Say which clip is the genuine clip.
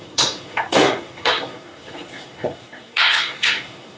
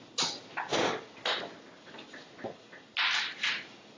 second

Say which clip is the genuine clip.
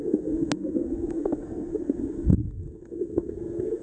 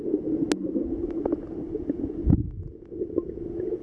second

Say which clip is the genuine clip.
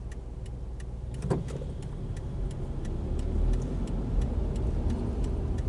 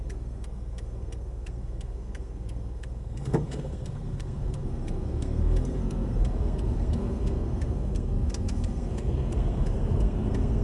first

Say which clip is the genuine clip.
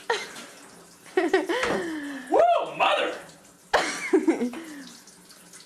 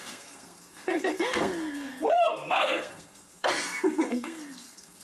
first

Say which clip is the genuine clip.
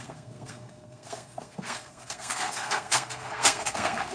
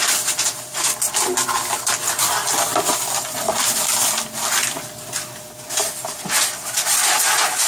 second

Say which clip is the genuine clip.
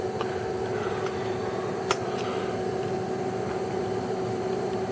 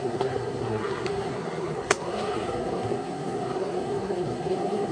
first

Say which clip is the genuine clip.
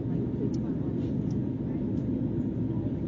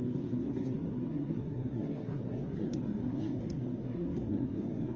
first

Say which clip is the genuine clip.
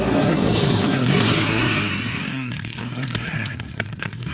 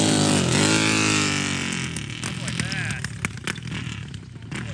second